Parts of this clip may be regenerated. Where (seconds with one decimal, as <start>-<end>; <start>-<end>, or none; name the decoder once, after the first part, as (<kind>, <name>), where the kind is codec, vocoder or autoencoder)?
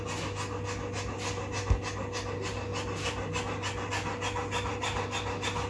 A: none